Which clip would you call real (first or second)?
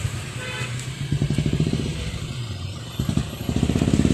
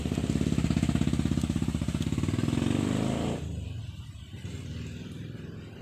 second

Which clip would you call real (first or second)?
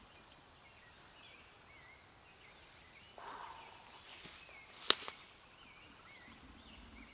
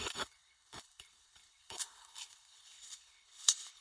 first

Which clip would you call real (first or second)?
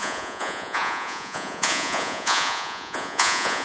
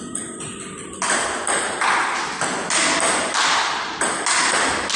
second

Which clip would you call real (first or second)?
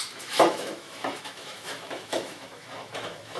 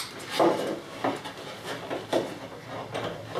second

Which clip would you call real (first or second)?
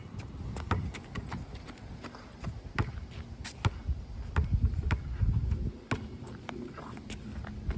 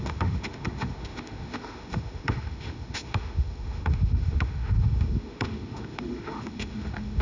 first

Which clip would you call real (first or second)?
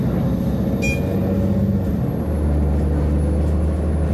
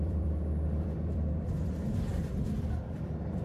first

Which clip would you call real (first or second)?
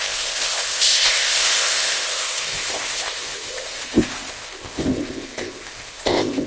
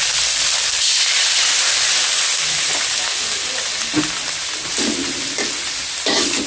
second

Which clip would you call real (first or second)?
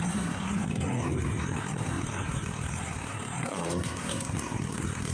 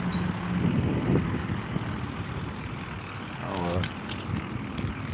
second